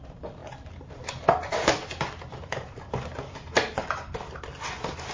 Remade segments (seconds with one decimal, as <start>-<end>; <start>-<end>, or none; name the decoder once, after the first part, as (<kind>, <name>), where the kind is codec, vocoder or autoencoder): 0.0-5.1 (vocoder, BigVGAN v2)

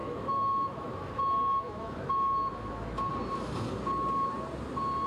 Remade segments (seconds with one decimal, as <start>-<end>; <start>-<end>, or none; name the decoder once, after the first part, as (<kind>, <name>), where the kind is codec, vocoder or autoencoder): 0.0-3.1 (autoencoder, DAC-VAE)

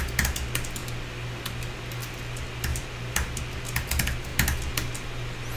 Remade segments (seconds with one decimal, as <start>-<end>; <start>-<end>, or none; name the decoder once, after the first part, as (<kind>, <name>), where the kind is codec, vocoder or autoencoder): 0.8-1.4 (vocoder, BigVGAN v2); 2.7-3.4

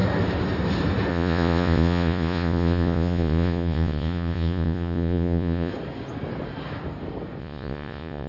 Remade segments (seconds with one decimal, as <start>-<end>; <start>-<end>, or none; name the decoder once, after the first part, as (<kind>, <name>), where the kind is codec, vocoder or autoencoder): 1.1-5.7 (vocoder, Vocos); 7.4-8.3